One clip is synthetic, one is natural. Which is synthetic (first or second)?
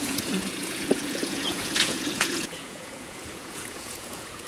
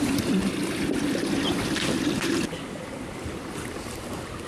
first